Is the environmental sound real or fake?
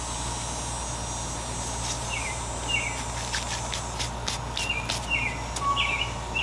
real